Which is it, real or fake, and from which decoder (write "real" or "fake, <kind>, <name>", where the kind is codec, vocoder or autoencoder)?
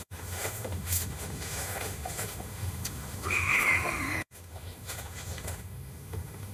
fake, autoencoder, DAC-VAE